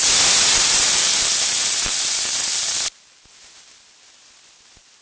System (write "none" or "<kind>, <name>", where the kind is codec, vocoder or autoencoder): none